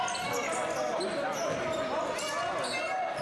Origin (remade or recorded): recorded